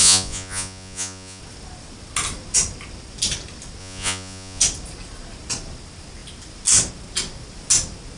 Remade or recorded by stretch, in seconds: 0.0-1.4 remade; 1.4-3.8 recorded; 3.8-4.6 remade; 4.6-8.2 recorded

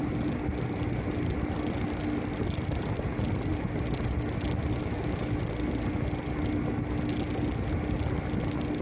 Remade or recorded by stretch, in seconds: 0.0-4.8 recorded; 4.8-5.4 remade; 5.4-8.8 recorded

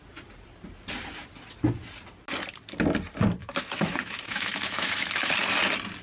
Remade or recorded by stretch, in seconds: 0.0-3.4 recorded; 3.4-5.3 remade; 5.3-6.0 recorded

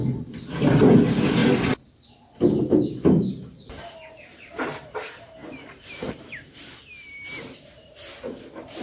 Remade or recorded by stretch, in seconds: 0.0-1.4 remade; 1.4-4.1 recorded; 4.1-8.8 remade

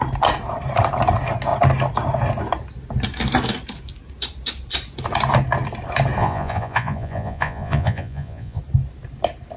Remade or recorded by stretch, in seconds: 0.0-6.2 recorded; 6.2-8.6 remade; 8.6-9.6 recorded

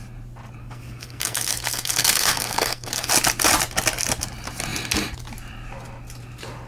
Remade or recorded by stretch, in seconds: 0.0-0.6 recorded; 0.6-3.1 remade; 3.1-6.7 recorded

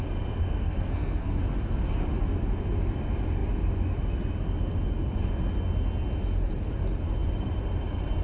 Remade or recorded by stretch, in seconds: 0.0-0.4 recorded; 0.4-1.4 remade; 1.4-8.2 recorded

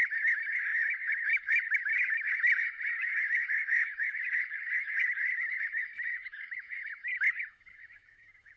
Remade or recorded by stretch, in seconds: 0.0-8.6 remade